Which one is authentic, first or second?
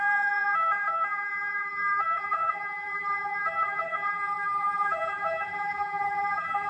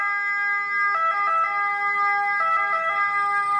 second